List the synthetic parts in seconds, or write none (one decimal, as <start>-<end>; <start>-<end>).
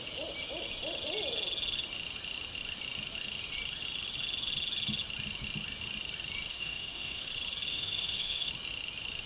6.5-7.3; 7.7-8.5